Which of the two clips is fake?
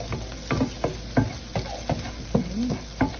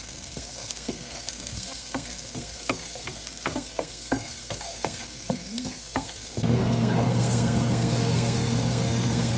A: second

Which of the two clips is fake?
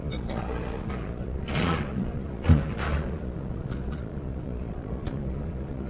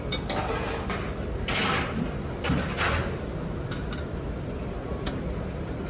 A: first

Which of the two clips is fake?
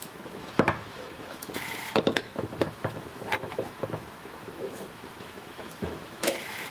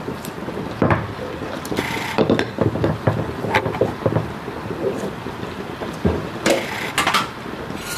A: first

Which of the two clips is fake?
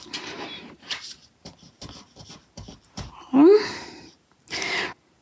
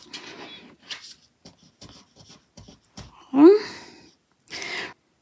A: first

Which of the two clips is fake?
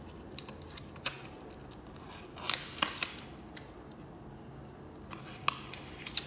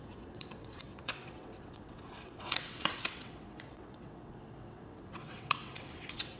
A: second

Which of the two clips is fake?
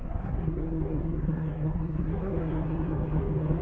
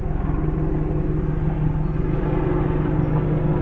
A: first